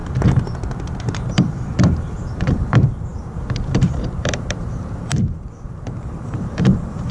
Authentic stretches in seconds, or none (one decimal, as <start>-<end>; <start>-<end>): 0.0-1.0